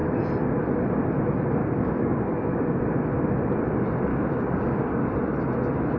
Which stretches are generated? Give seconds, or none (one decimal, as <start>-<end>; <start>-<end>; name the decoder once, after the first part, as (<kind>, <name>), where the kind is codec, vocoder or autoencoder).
1.6-2.8 (codec, DAC); 4.1-5.0

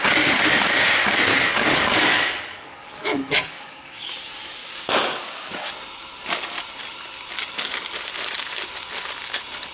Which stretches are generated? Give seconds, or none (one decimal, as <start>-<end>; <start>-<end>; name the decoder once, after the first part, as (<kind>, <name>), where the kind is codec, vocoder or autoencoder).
1.3-4.1 (codec, DAC); 4.6-5.7

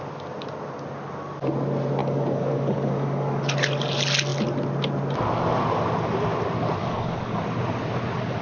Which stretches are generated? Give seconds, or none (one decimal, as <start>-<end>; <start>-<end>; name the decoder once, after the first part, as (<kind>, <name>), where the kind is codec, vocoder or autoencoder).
2.0-3.5 (codec, DAC); 6.8-7.4

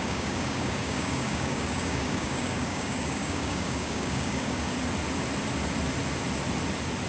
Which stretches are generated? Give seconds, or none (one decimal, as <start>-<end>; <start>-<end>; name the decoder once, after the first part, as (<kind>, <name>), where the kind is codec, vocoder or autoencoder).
0.0-4.7 (codec, DAC)

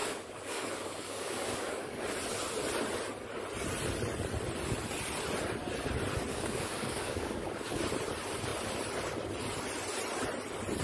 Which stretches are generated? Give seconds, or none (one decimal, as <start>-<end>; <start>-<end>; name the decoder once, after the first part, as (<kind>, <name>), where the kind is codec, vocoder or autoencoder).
0.0-2.0 (codec, DAC); 6.3-7.8

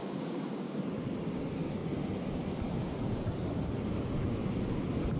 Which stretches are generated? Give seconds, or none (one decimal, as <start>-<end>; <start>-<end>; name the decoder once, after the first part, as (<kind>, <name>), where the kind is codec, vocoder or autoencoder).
0.0-0.8 (codec, DAC)